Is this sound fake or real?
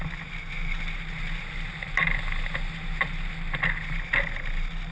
real